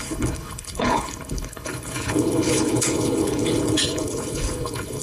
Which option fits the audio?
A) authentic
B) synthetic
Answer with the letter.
B